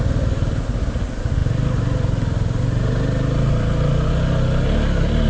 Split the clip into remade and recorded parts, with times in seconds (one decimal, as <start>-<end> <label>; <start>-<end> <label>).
0.0-5.3 recorded

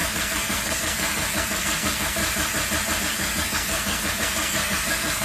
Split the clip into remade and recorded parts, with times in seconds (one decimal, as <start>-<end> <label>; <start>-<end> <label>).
0.0-2.2 remade; 2.2-3.0 recorded; 3.0-5.2 remade

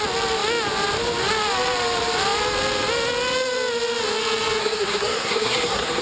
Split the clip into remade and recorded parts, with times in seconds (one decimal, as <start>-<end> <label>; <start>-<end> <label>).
0.0-4.6 recorded; 4.6-6.0 remade